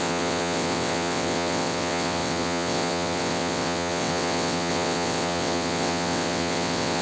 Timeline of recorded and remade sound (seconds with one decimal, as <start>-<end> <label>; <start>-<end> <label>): 0.0-7.0 remade